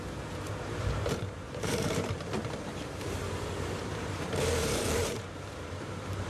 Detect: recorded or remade remade